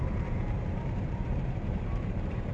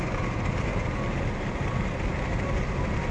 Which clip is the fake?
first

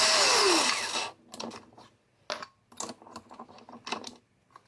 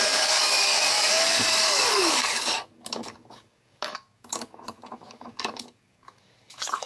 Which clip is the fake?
second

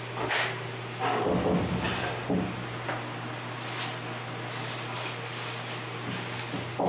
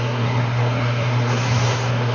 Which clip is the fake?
second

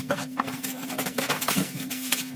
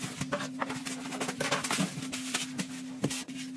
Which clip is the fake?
first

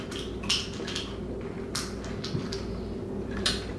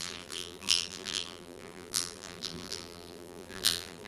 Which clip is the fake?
second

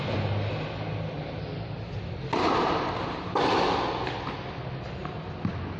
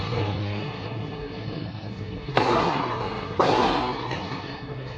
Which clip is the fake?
second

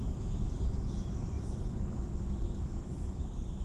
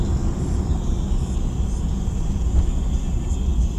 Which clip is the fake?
first